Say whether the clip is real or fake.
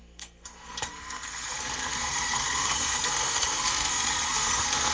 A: fake